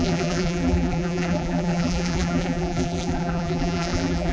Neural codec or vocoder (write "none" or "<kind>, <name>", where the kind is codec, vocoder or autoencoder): vocoder, BigVGAN v2